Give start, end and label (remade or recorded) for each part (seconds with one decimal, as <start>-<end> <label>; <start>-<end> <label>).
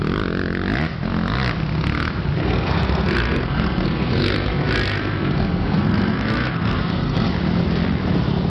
0.0-2.4 recorded; 2.4-7.3 remade; 7.3-8.5 recorded